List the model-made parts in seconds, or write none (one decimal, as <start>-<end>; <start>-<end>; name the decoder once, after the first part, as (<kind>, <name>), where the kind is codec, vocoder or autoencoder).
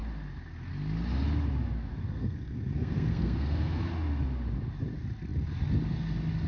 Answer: 1.9-3.8 (codec, SNAC)